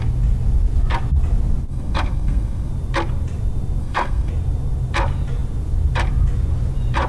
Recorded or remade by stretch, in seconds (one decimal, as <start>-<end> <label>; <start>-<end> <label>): 0.0-1.7 recorded; 1.7-2.7 remade; 2.7-3.8 recorded; 3.8-4.3 remade; 4.3-7.1 recorded